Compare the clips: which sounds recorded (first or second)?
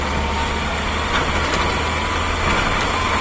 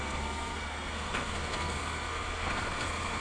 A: first